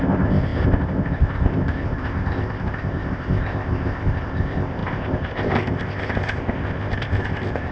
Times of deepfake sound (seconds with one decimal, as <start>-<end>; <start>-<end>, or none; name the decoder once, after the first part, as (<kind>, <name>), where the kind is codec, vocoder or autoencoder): 0.0-7.7 (codec, ZipCodec)

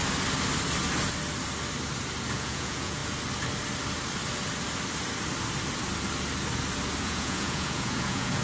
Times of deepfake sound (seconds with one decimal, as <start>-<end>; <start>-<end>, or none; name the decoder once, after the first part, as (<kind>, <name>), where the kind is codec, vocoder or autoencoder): 2.3-3.0 (vocoder, Vocos); 7.0-8.4

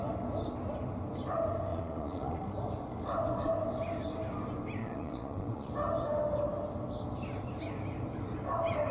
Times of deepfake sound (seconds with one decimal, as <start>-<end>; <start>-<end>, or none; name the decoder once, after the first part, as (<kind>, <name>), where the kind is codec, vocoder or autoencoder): 1.7-2.4 (vocoder, Vocos); 4.8-5.7